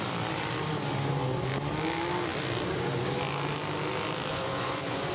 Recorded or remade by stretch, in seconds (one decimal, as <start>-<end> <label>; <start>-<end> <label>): 0.0-4.3 recorded; 4.3-5.1 remade